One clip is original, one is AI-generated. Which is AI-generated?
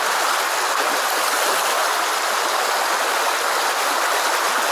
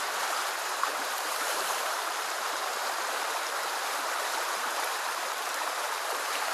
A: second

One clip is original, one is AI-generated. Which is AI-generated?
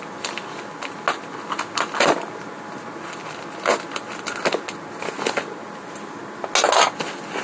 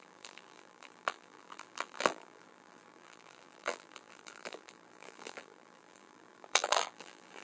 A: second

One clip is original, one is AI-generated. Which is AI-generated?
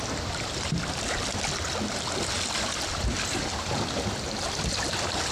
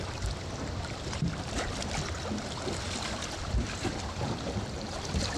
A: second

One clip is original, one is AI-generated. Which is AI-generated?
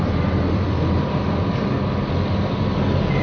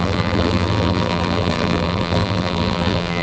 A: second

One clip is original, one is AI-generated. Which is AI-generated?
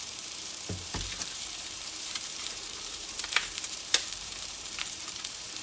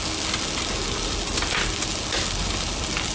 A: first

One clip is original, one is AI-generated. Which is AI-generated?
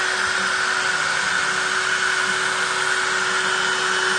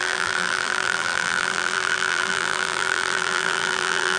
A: second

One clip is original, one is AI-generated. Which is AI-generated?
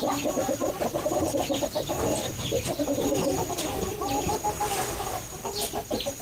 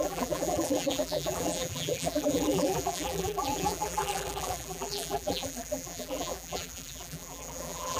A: second